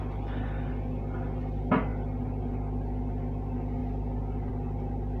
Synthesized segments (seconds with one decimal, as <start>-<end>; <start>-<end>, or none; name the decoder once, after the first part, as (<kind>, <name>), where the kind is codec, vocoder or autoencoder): none